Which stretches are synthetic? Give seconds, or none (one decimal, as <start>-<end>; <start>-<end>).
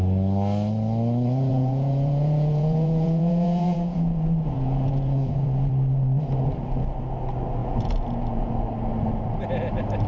1.5-5.7; 7.6-8.5